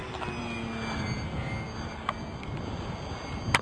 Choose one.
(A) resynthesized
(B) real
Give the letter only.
B